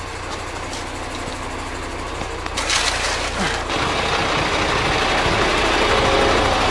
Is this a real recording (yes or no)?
yes